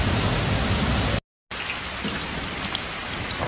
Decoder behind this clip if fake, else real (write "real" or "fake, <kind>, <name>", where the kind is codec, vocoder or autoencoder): real